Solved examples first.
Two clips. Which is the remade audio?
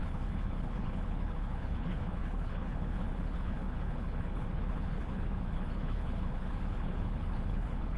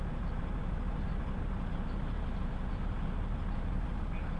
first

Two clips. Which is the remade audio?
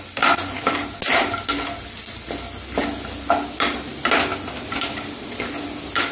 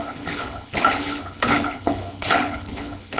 second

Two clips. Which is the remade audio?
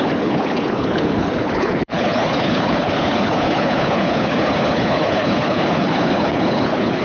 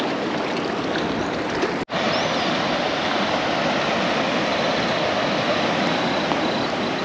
first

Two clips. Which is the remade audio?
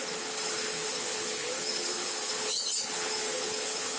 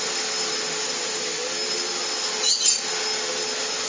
first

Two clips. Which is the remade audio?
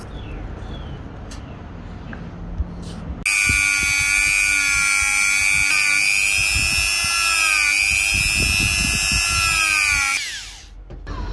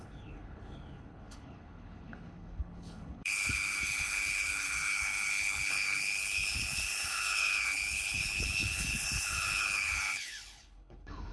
second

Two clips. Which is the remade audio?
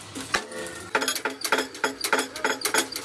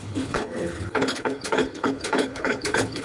second